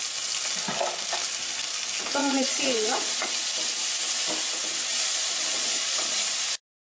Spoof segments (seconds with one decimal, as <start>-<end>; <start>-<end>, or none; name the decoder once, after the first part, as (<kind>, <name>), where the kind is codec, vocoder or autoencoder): 2.2-3.3 (vocoder, Vocos); 4.9-6.3

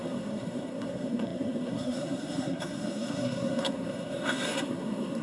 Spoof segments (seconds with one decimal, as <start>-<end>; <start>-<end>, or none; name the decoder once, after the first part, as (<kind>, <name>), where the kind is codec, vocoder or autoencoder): 0.0-5.2 (codec, SNAC)

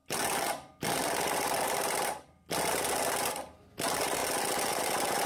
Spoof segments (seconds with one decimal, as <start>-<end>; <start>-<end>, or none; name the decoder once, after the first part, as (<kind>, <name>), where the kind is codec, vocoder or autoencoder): none

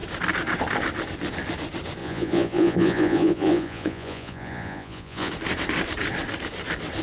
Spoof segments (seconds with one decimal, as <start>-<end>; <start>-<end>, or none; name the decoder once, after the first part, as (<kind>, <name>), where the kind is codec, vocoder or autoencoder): 2.0-5.3 (vocoder, Vocos)

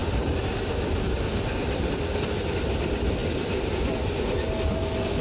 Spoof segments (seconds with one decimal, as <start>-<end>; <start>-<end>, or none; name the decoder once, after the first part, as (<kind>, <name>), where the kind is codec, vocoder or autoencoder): 0.0-1.8 (vocoder, BigVGAN v2); 3.2-4.1

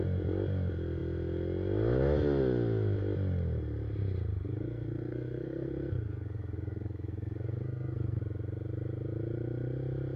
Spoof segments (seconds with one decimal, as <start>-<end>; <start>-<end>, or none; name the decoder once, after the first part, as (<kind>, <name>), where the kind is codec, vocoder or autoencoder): 4.5-8.2 (codec, SNAC)

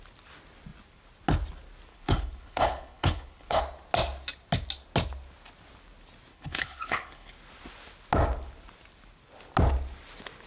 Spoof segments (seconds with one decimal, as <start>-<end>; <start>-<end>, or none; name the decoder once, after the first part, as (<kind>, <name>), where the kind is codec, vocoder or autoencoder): 1.9-3.6 (codec, HILCodec); 6.3-7.3

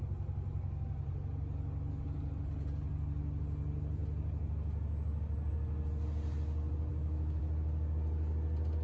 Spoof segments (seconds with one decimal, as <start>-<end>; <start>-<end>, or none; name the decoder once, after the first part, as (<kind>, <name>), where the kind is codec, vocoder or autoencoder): 6.9-7.4 (autoencoder, DAC-VAE)